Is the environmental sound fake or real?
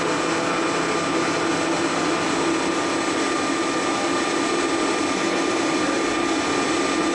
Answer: real